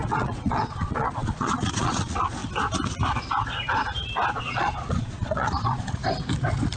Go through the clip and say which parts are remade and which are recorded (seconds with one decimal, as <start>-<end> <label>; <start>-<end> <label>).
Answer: 0.0-2.4 remade; 2.4-4.4 recorded; 4.4-6.0 remade; 6.0-6.8 recorded